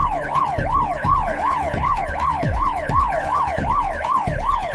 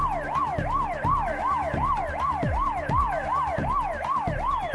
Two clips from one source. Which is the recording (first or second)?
second